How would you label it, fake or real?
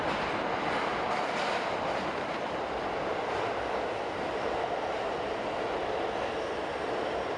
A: real